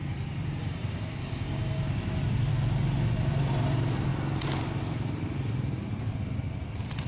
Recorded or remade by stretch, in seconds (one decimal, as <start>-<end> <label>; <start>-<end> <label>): 0.0-0.6 recorded; 0.6-1.8 remade; 1.8-7.1 recorded